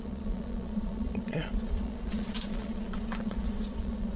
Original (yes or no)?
no